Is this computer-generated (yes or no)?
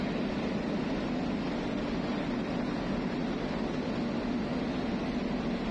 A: no